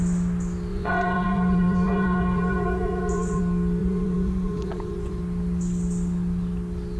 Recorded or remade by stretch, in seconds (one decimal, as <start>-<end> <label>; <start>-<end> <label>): 0.0-0.7 recorded; 0.7-3.4 remade; 3.4-3.8 recorded; 3.8-5.2 remade; 5.2-7.0 recorded